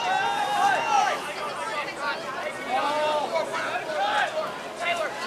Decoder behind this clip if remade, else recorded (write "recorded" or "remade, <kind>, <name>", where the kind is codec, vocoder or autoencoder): recorded